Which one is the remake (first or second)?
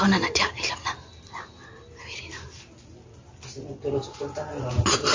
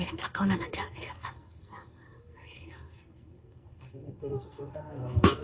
second